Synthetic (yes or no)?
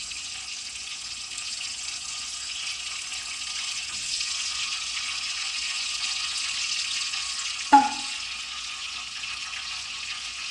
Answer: yes